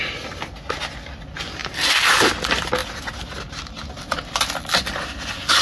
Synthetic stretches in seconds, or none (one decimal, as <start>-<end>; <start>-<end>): none